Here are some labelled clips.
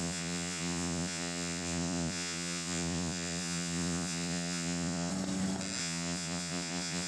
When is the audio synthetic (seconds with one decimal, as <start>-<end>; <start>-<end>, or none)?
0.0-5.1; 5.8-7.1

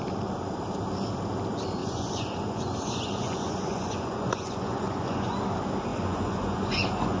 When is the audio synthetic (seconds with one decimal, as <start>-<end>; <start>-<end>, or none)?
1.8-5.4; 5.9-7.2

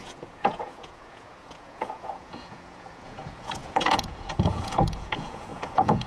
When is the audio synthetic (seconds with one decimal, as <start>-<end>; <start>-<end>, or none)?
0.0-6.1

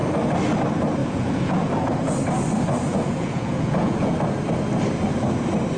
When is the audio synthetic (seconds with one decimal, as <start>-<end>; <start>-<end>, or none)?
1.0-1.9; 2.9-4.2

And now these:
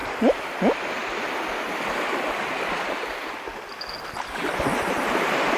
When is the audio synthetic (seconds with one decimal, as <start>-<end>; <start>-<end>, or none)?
none

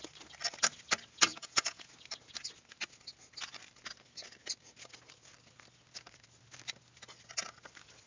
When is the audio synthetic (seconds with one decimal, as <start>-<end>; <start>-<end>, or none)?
1.3-1.9

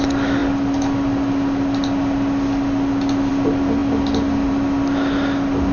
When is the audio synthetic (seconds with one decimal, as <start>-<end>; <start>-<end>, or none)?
none